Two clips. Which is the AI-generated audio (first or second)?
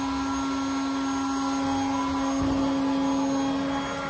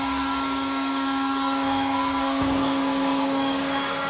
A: second